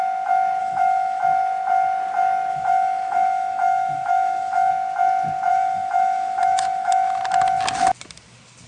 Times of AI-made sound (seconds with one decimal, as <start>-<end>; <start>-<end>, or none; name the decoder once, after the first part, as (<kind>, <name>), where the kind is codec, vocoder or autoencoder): 0.6-1.2 (autoencoder, DAC-VAE); 2.5-4.7; 5.5-7.2